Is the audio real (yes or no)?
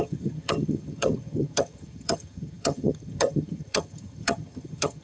no